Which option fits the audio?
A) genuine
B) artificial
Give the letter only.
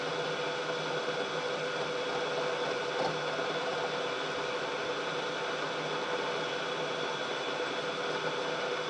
A